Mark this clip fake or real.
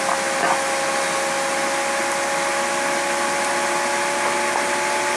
real